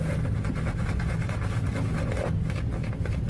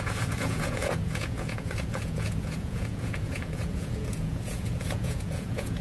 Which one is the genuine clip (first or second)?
first